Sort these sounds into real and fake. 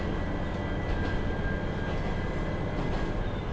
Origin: real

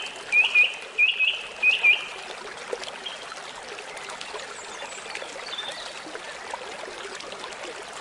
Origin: real